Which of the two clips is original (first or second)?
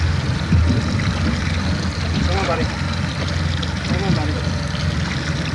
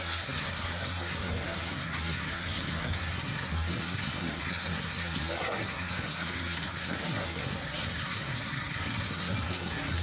first